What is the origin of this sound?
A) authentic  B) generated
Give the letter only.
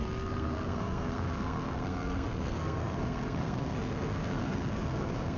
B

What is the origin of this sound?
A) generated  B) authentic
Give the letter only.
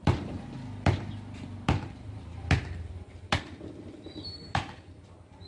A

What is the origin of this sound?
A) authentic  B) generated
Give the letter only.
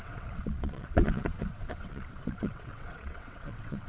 B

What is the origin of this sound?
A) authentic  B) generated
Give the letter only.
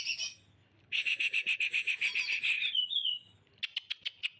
A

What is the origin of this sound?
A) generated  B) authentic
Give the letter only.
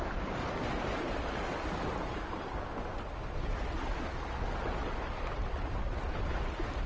B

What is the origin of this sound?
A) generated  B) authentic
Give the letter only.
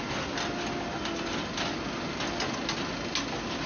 B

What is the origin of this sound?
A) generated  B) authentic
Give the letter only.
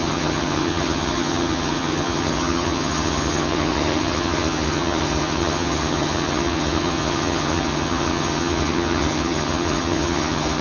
A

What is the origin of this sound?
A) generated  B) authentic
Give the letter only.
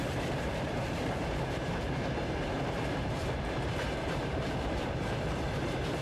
A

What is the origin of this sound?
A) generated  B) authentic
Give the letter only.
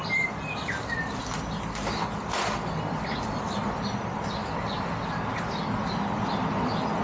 B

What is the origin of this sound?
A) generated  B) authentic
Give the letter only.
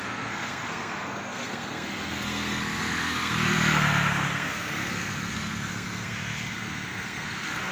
A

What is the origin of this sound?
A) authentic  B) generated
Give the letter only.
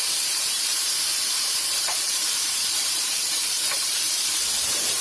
B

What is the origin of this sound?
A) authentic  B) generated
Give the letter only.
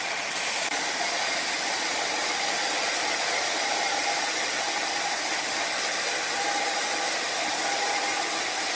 A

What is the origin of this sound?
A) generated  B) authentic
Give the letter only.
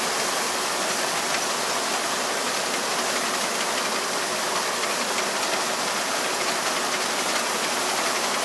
B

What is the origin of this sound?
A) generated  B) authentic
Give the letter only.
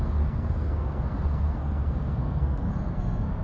A